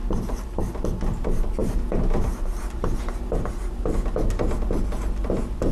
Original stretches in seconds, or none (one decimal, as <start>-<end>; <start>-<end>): 0.7-1.6; 3.8-5.7